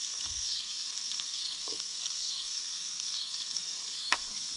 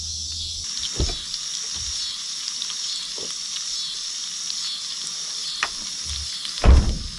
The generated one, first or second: first